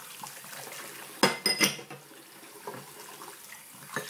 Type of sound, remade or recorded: recorded